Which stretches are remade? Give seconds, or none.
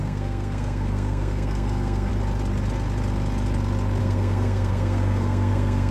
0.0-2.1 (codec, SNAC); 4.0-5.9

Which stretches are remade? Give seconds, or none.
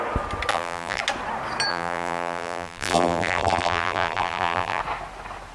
0.5-1.0 (vocoder, BigVGAN v2); 1.7-4.8